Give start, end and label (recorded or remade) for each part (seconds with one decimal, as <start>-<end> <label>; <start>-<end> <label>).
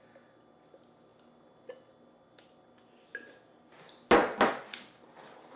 0.0-5.6 recorded